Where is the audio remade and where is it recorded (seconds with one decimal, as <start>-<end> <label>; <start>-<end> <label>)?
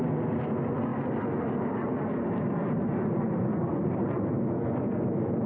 0.0-3.7 recorded; 3.7-4.3 remade; 4.3-5.5 recorded